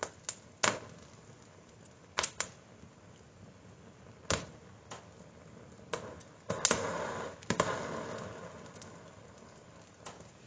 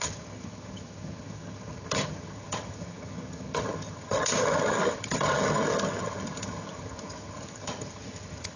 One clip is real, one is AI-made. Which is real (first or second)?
first